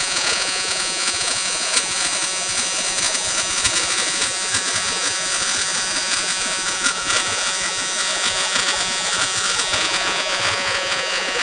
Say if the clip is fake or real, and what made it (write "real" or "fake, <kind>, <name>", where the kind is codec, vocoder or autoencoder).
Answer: fake, vocoder, Vocos